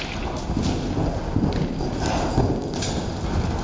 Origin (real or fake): real